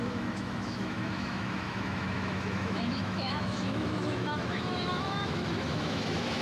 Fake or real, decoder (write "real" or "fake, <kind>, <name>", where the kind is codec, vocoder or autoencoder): fake, autoencoder, DAC-VAE